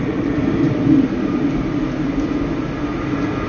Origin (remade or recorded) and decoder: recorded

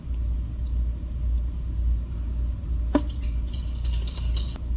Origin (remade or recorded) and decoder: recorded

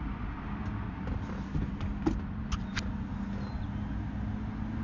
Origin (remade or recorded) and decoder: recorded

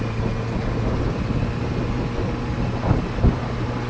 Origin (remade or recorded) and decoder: recorded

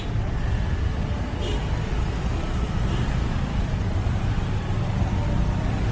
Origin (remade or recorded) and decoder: recorded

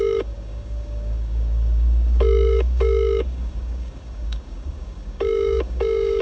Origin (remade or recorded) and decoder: remade, codec, DAC